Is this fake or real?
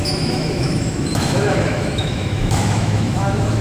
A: fake